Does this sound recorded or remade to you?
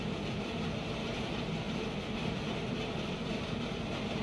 remade